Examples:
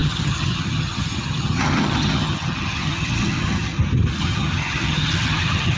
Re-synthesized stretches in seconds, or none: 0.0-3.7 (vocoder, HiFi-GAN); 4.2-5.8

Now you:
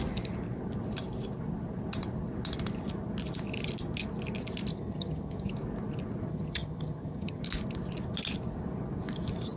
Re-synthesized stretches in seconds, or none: 4.7-5.5 (vocoder, HiFi-GAN); 6.3-7.4

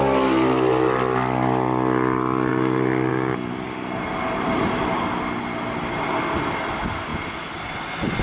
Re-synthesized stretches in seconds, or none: none

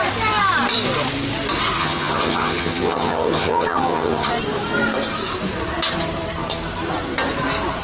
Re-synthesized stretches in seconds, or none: 1.8-4.3 (vocoder, HiFi-GAN)

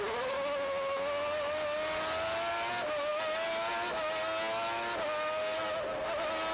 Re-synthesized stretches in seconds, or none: none

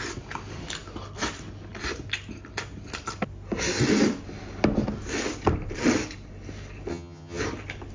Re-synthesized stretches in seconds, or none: 6.9-7.4 (vocoder, HiFi-GAN)

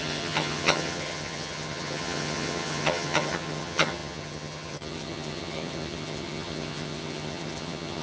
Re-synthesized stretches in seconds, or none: 0.0-8.0 (vocoder, HiFi-GAN)

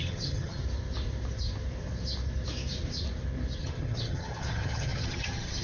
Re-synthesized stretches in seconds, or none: 0.0-0.6 (vocoder, HiFi-GAN); 3.6-5.6